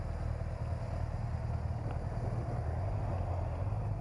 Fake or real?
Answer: real